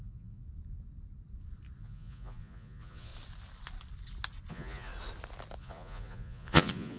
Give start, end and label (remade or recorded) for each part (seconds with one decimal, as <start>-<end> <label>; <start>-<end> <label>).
0.0-0.4 remade; 0.4-1.8 recorded; 1.8-3.1 remade; 3.1-4.5 recorded; 4.5-4.9 remade; 4.9-5.6 recorded; 5.6-7.0 remade